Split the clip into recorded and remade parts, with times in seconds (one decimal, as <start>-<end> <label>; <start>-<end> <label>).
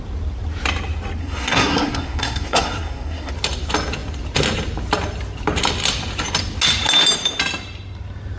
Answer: 0.0-1.2 recorded; 1.2-3.3 remade; 3.3-8.4 recorded